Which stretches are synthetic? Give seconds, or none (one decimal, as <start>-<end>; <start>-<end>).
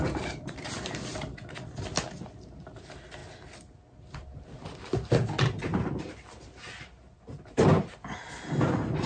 none